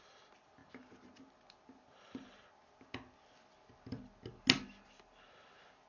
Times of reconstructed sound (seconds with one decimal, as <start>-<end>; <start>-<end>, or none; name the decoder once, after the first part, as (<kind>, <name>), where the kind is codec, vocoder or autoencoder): none